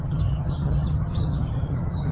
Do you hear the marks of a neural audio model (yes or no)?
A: yes